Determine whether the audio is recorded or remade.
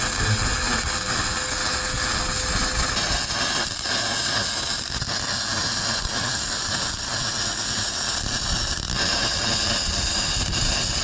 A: recorded